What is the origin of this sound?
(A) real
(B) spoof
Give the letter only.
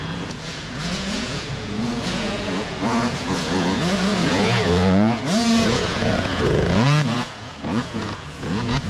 B